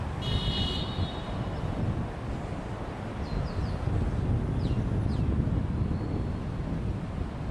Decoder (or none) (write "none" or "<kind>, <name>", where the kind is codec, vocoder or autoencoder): none